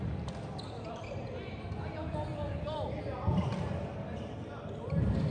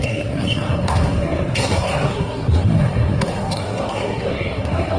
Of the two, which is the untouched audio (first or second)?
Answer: first